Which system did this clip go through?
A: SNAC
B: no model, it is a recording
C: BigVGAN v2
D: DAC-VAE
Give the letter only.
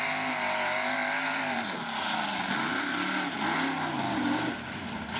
B